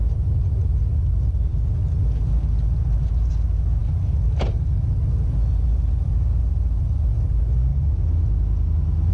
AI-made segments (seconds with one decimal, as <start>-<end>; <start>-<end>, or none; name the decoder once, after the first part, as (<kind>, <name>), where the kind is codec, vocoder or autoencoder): none